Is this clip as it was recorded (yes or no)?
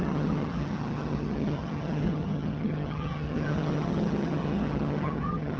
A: no